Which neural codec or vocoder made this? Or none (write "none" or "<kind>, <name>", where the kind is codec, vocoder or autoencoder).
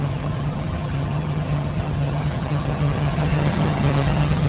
vocoder, HiFi-GAN